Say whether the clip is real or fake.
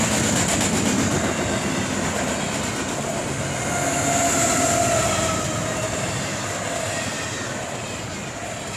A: real